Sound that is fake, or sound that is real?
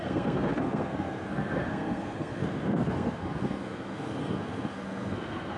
fake